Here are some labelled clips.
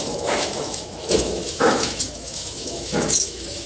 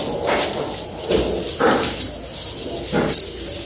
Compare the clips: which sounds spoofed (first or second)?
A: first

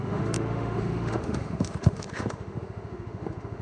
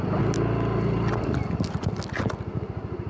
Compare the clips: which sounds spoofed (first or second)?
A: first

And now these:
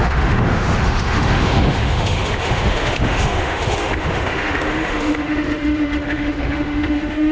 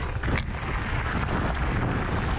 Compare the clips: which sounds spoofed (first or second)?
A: first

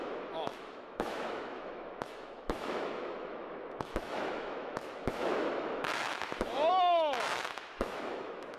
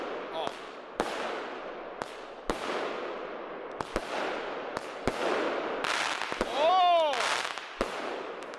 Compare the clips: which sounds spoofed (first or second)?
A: first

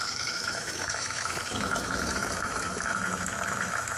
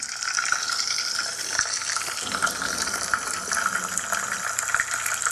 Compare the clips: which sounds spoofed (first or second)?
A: first